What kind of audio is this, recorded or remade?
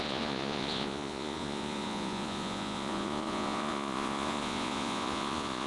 remade